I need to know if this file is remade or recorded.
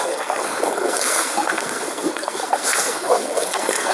remade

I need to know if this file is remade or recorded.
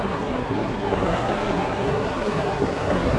remade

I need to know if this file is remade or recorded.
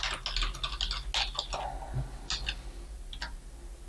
recorded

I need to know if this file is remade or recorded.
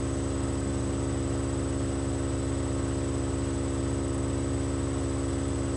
recorded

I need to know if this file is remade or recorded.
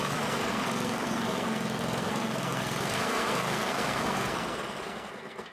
remade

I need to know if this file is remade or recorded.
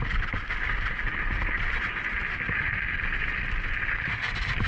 recorded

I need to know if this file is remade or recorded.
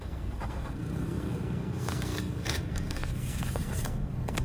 remade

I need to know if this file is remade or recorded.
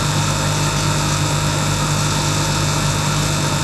recorded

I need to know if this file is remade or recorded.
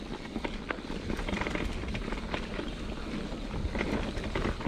recorded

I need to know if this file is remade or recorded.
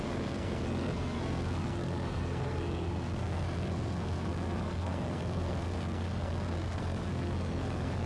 remade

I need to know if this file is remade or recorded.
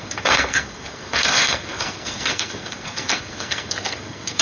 remade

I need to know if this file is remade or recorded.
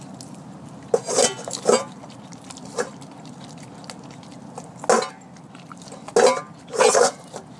recorded